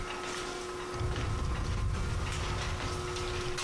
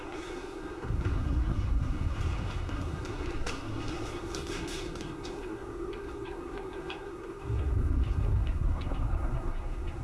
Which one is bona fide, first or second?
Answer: first